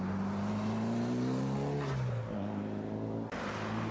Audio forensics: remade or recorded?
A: recorded